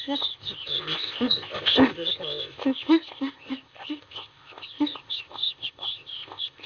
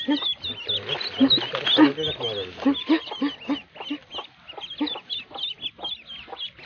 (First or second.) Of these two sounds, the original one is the second